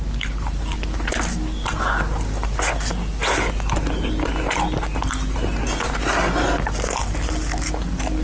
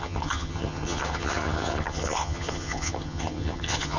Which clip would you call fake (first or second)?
second